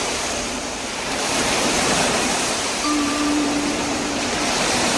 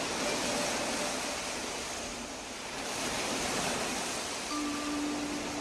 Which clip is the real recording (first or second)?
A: second